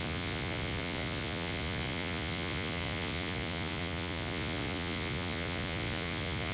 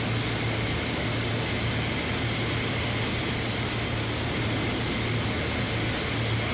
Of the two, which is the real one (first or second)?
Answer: second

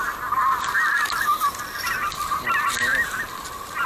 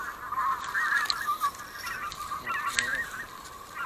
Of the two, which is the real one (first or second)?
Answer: first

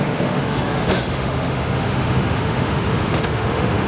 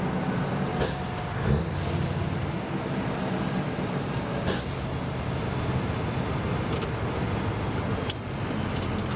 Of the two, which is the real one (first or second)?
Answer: second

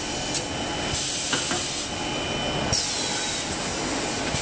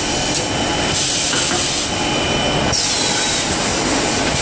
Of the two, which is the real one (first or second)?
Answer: first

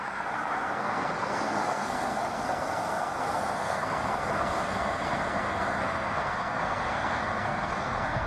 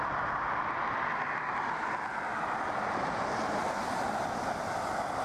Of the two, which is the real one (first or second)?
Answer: second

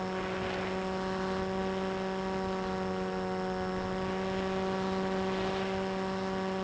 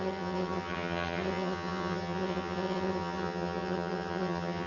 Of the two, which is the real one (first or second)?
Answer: first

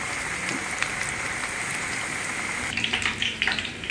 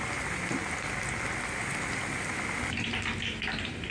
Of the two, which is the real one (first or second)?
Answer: second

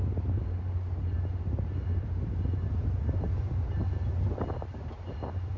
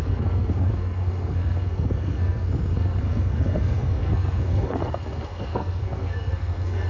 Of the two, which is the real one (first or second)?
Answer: first